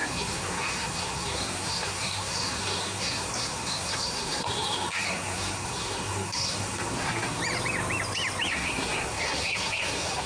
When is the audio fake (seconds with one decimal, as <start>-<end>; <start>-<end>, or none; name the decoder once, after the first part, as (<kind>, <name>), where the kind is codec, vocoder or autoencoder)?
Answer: 0.0-7.4 (codec, SNAC); 8.5-10.3